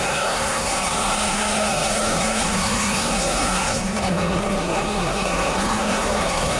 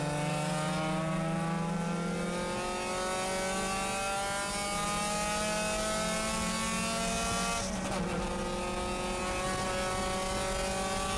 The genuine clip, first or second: second